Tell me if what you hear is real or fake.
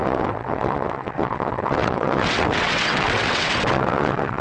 fake